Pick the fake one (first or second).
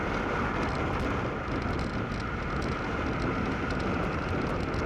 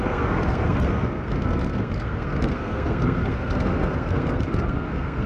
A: second